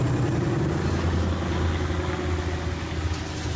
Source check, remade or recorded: recorded